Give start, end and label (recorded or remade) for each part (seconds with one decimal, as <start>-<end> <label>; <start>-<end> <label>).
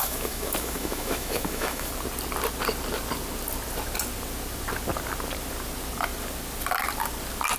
0.0-1.9 remade; 1.9-7.6 recorded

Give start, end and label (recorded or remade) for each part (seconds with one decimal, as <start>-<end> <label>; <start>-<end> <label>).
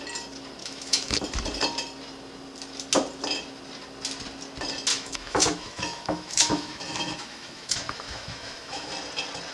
0.0-0.6 recorded; 0.6-1.2 remade; 1.2-4.9 recorded; 4.9-8.9 remade; 8.9-9.5 recorded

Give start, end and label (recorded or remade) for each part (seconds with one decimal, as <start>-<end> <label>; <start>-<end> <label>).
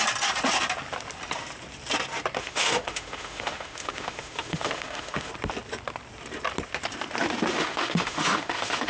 0.0-2.4 recorded; 2.4-5.3 remade; 5.3-7.5 recorded; 7.5-8.9 remade